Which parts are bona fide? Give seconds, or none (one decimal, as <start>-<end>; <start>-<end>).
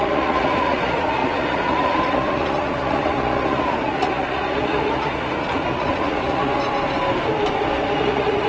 6.6-8.0